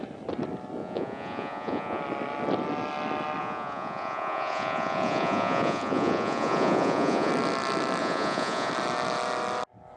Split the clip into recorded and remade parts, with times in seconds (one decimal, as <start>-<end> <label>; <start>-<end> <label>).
0.0-0.8 recorded; 0.8-2.0 remade; 2.0-3.4 recorded; 3.4-7.3 remade; 7.3-8.0 recorded; 8.0-8.7 remade; 8.7-10.0 recorded